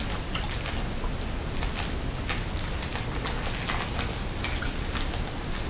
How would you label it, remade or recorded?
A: recorded